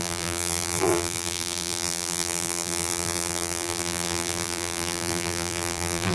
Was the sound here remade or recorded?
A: remade